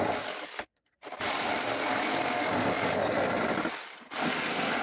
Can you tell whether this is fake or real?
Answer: real